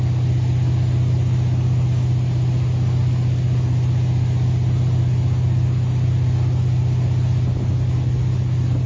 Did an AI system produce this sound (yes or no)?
no